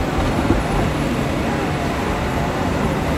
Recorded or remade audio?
recorded